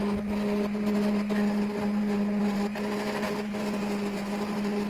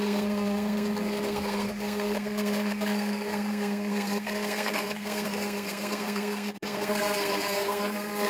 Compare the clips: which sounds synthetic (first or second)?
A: second